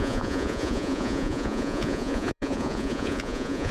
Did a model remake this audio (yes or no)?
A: yes